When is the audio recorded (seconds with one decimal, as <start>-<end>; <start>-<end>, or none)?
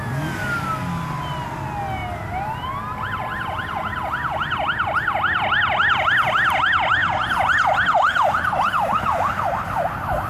0.0-2.0; 2.8-7.0; 8.7-10.3